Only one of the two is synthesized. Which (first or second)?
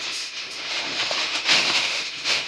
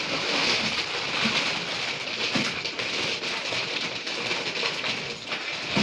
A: first